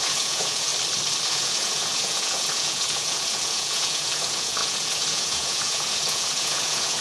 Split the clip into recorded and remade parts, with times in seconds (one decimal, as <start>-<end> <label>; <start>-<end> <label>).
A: 0.0-0.7 remade; 0.7-1.3 recorded; 1.3-7.0 remade